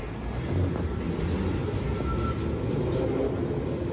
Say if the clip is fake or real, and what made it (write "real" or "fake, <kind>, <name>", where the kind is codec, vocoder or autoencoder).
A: real